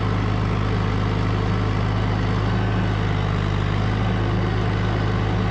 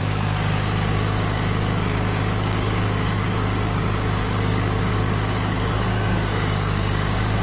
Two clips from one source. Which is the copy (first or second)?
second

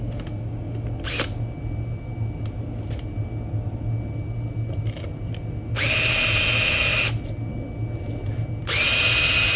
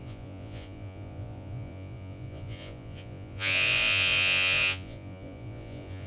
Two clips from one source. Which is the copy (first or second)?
second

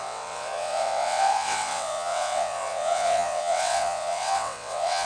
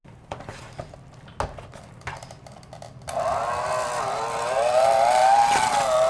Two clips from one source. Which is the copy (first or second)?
first